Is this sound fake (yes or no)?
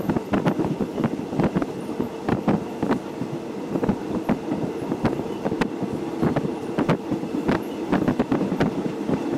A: no